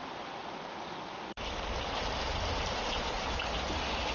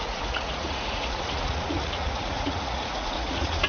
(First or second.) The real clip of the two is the first